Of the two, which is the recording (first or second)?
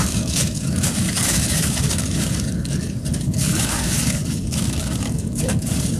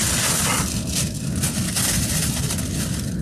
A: second